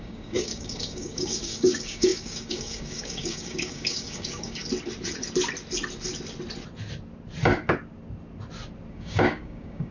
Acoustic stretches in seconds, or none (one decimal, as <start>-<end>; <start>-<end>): 4.6-8.9